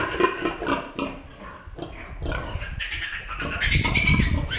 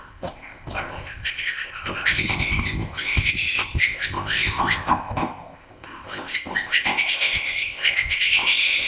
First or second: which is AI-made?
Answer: second